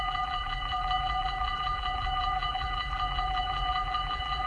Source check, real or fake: fake